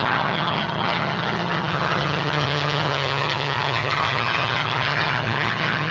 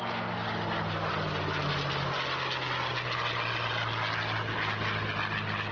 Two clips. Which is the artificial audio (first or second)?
first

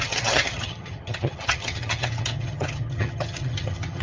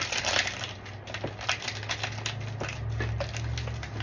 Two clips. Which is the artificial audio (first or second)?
first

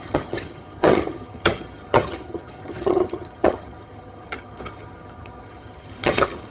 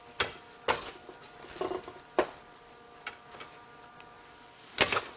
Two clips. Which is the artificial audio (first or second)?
first